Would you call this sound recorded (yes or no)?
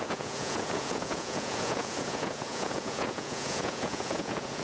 no